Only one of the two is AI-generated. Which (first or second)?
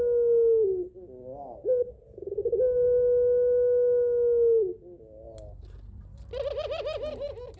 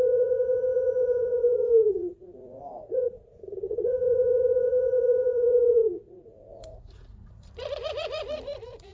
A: second